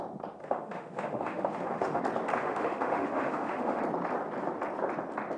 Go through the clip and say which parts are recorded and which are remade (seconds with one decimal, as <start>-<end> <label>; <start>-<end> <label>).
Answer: 0.0-0.4 recorded; 0.4-2.0 remade; 2.0-2.4 recorded; 2.4-3.8 remade; 3.8-5.4 recorded